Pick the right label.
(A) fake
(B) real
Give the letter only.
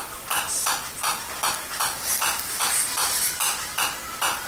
B